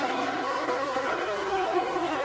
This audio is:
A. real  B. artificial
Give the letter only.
B